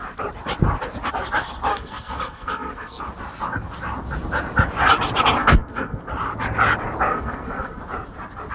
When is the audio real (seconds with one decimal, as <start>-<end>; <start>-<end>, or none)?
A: 0.0-1.7; 3.0-5.4; 6.0-7.1; 7.8-8.5